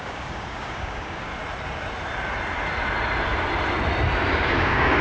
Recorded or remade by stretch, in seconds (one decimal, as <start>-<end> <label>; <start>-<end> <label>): 0.0-1.3 remade; 1.3-4.3 recorded; 4.3-5.0 remade